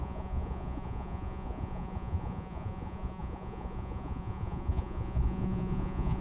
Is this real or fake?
fake